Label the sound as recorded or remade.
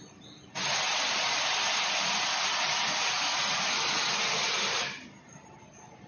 recorded